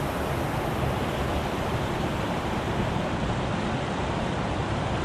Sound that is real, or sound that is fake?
real